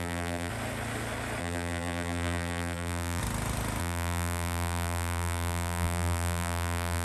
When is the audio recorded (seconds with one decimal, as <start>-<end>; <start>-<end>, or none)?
0.5-1.4; 3.2-3.8